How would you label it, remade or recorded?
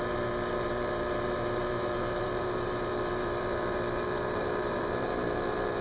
remade